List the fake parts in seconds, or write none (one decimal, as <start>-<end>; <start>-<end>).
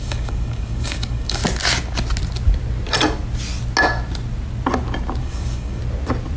0.0-1.4; 5.2-5.8